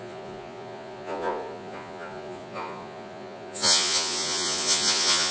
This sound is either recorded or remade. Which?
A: remade